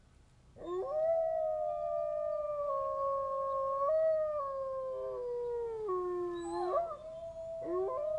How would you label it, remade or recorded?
recorded